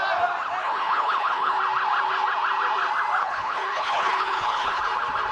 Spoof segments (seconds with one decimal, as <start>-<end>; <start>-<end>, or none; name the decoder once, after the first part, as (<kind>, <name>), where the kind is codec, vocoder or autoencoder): 0.6-1.6 (codec, HILCodec); 3.2-4.8